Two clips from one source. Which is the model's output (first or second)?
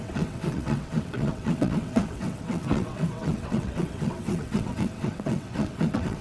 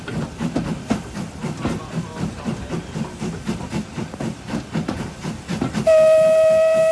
first